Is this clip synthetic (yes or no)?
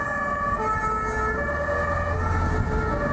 no